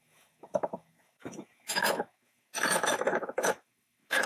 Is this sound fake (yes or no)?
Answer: yes